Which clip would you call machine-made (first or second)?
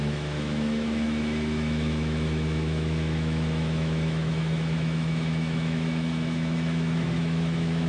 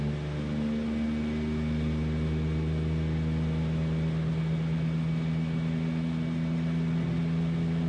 first